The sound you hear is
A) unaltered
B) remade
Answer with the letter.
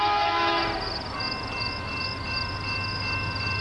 A